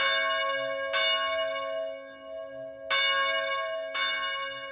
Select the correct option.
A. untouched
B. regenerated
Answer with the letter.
A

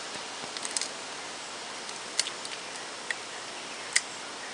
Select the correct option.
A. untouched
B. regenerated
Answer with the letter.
A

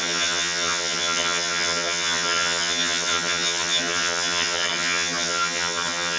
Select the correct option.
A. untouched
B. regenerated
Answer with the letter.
B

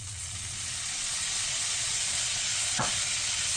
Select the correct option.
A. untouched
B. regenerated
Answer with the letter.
B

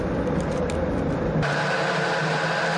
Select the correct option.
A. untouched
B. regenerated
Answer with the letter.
A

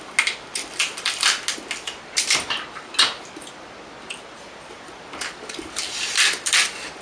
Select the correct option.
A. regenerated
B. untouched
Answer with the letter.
B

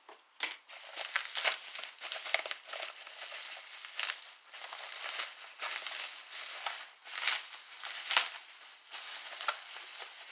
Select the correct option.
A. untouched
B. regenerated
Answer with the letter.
A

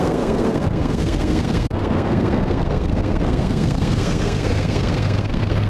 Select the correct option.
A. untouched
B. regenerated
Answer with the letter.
B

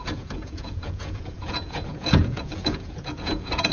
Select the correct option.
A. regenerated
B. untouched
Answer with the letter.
A